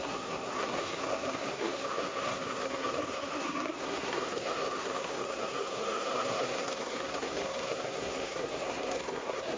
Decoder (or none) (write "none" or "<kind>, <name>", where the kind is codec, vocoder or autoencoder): codec, SNAC